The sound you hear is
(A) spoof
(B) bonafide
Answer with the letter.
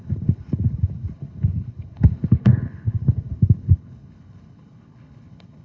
A